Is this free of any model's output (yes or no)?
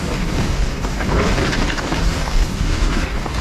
no